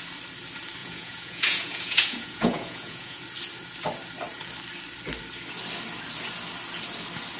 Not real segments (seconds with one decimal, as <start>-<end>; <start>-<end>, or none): 0.8-3.2